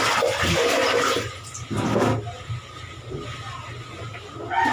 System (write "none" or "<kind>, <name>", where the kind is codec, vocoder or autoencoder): none